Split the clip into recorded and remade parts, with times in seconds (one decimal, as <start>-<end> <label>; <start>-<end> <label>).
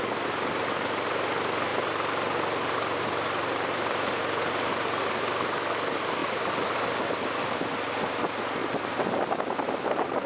0.0-1.7 recorded; 1.7-4.7 remade; 4.7-10.3 recorded